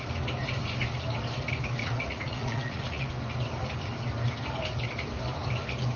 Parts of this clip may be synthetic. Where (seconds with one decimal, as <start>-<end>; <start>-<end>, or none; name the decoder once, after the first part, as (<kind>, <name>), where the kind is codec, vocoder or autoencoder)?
1.8-3.1 (vocoder, Vocos)